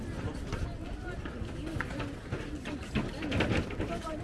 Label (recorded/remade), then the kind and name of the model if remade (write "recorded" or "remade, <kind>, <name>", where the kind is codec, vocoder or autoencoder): recorded